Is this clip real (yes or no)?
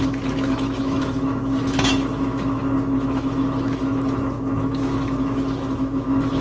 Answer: no